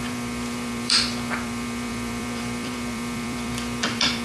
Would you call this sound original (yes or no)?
no